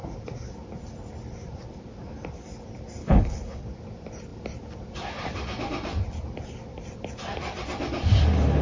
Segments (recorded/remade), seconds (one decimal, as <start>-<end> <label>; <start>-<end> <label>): 0.0-3.0 recorded; 3.0-3.6 remade; 3.6-8.6 recorded